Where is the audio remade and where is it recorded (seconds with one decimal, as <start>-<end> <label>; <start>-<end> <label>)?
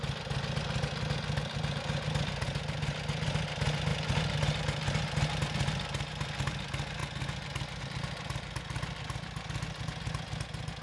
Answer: 0.0-10.8 recorded